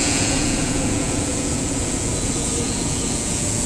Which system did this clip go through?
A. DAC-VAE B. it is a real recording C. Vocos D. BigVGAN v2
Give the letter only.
C